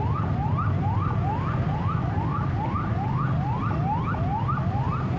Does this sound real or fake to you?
real